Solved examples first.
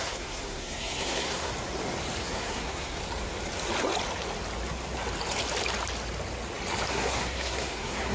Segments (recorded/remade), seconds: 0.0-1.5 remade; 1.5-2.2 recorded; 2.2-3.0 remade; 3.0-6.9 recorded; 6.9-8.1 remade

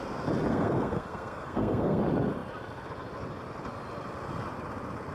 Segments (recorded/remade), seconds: 0.0-0.5 recorded; 0.5-2.0 remade; 2.0-5.1 recorded

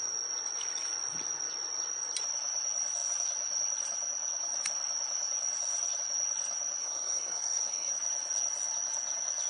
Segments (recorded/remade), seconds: 0.0-6.8 recorded; 6.8-7.9 remade; 7.9-9.5 recorded

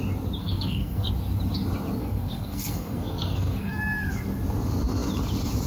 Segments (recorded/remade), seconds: 0.0-0.4 recorded; 0.4-1.1 remade; 1.1-2.0 recorded; 2.0-3.8 remade; 3.8-5.7 recorded